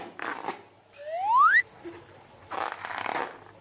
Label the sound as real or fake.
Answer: real